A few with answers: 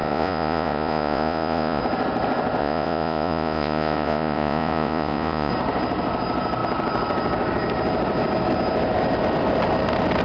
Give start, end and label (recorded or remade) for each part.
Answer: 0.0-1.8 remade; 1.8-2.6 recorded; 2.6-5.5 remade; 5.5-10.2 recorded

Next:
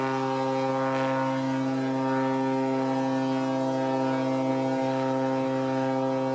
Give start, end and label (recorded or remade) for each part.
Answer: 0.0-6.3 recorded